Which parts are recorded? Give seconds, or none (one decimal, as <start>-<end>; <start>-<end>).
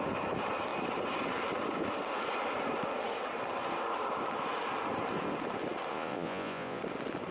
0.0-5.9; 6.8-7.3